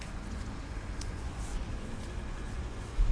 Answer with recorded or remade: remade